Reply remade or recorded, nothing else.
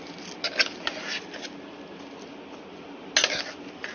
recorded